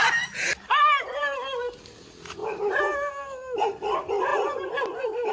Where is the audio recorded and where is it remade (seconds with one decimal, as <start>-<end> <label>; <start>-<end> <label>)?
0.0-1.2 remade; 1.2-2.4 recorded; 2.4-3.1 remade; 3.1-4.3 recorded; 4.3-5.3 remade